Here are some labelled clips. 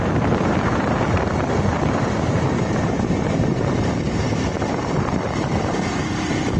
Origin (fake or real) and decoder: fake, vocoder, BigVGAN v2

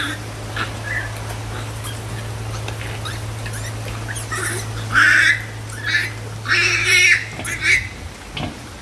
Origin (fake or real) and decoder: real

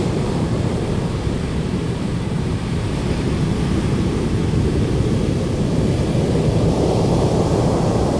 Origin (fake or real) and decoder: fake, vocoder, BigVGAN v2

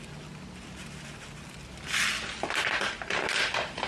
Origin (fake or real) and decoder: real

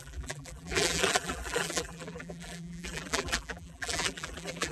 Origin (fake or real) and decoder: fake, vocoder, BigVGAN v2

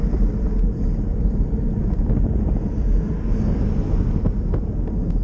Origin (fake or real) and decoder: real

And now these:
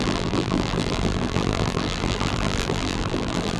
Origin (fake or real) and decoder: fake, vocoder, BigVGAN v2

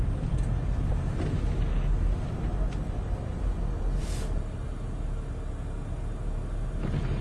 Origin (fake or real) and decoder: real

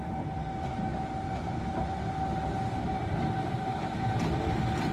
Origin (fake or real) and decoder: real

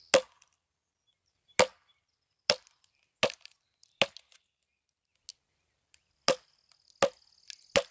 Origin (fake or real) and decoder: real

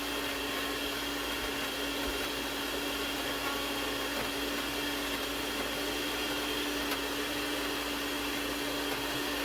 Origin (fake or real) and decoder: real